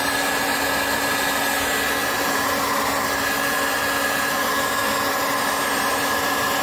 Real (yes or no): yes